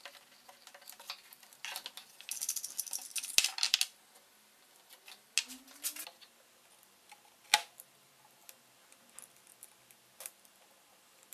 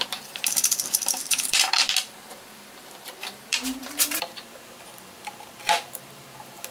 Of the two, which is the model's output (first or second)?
second